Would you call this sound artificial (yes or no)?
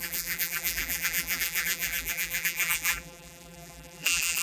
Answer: yes